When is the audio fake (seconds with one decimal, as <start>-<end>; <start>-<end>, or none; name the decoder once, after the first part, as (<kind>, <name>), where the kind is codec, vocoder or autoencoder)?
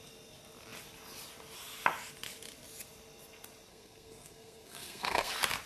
3.7-5.3 (codec, SNAC)